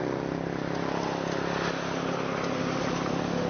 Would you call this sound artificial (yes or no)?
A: no